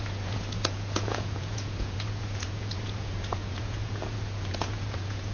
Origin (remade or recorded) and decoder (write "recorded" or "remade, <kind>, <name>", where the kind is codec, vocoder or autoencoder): remade, vocoder, Vocos